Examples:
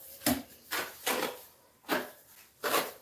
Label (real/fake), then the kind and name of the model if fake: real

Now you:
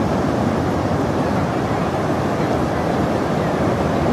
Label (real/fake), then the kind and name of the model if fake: real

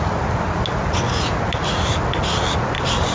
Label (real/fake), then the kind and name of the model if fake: real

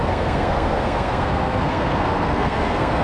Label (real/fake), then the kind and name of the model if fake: fake, codec, SNAC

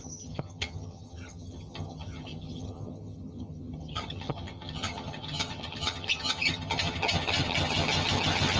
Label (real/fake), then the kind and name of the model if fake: fake, vocoder, HiFi-GAN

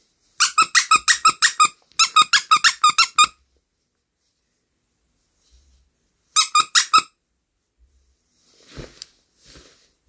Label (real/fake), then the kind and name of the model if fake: real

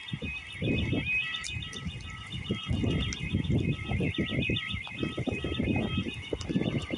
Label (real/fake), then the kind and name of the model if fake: real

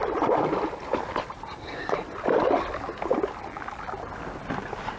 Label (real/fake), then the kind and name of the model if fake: real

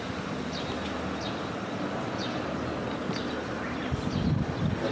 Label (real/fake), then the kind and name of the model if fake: real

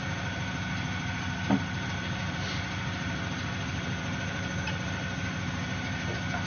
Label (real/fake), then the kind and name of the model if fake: real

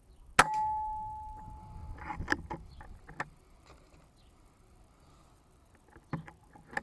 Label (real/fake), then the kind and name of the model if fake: real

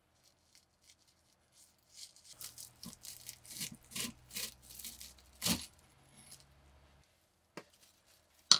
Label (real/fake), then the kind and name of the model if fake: real